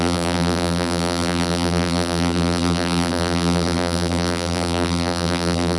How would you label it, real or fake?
fake